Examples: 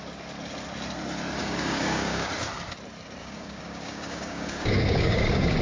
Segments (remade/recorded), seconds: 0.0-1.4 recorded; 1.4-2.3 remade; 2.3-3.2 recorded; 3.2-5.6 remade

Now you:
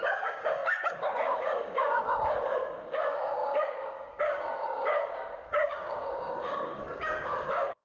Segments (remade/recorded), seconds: 0.0-7.8 remade

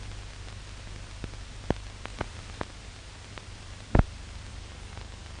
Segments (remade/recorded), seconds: 0.0-4.5 recorded; 4.5-5.4 remade

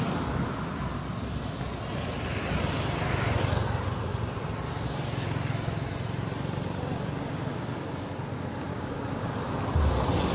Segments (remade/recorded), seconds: 0.0-8.7 recorded; 8.7-9.3 remade; 9.3-10.3 recorded

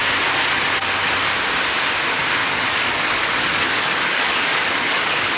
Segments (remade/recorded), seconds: 0.0-2.4 recorded; 2.4-5.4 remade

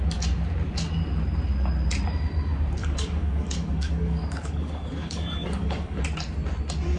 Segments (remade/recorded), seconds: 0.0-2.8 recorded; 2.8-6.0 remade; 6.0-7.0 recorded

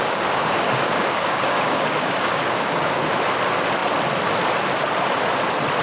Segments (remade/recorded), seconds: 0.0-3.1 remade; 3.1-5.8 recorded

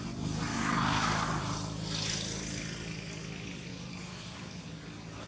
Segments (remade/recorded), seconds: 0.0-0.5 recorded; 0.5-1.4 remade; 1.4-3.7 recorded; 3.7-4.6 remade; 4.6-5.3 recorded